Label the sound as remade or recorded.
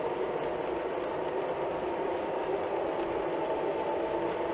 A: recorded